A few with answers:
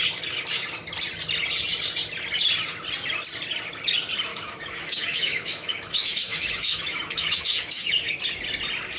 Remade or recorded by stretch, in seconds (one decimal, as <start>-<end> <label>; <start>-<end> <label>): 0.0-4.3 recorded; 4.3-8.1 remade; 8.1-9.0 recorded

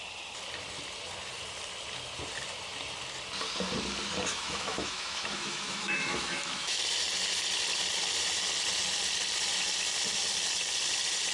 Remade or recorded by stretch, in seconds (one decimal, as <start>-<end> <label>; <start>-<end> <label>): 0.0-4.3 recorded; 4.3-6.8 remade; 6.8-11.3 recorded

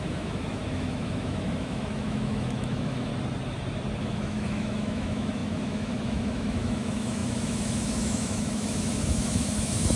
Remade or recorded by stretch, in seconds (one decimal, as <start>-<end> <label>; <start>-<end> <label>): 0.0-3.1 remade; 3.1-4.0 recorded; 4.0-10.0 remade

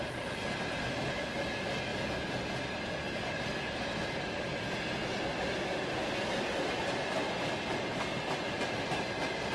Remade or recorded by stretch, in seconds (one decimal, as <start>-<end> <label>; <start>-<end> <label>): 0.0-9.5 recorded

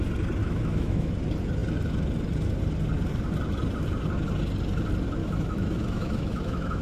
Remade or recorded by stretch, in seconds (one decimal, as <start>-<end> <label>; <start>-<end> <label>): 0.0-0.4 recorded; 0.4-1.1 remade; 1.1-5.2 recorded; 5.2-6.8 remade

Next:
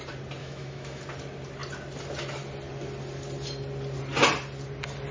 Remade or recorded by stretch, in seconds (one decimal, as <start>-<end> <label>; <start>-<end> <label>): 0.0-0.4 recorded; 0.4-1.0 remade; 1.0-5.1 recorded

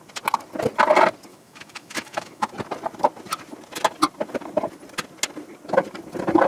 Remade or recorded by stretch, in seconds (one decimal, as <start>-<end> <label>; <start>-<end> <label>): 0.0-1.3 recorded; 1.3-2.5 remade; 2.5-6.5 recorded